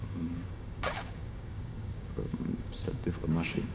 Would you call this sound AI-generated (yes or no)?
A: yes